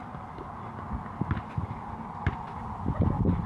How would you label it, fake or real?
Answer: real